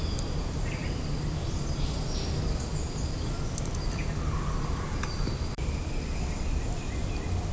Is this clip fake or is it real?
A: real